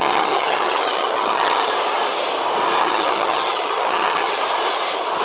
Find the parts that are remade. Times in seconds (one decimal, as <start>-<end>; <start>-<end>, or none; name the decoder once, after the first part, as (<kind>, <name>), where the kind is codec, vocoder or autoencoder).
0.0-1.7 (vocoder, HiFi-GAN); 2.8-4.4